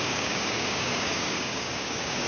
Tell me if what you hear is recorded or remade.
remade